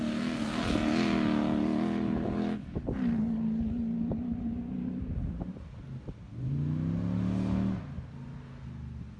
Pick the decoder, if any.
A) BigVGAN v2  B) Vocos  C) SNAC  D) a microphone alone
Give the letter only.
D